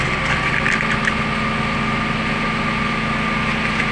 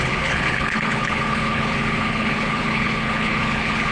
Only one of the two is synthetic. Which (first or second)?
second